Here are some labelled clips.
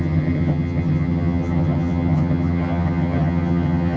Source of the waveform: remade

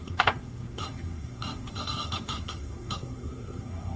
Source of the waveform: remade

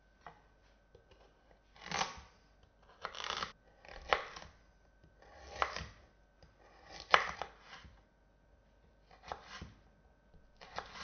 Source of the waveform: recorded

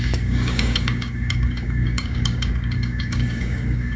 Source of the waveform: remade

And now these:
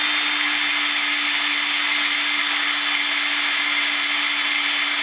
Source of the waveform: recorded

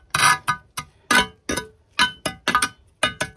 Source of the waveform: recorded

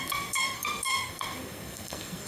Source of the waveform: remade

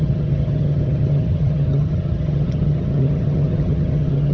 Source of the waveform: remade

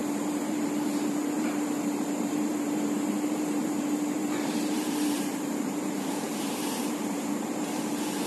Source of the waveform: remade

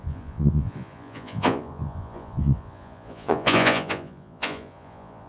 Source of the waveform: remade